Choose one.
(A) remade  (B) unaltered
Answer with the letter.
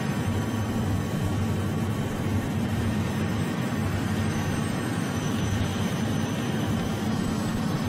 A